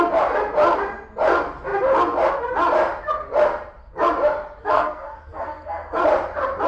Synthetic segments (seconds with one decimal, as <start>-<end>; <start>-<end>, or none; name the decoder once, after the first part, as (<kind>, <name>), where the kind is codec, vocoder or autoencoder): 4.6-6.0 (codec, SNAC)